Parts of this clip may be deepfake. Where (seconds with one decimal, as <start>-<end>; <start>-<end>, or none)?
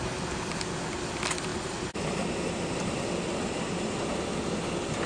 none